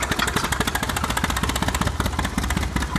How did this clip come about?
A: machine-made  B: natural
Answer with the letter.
B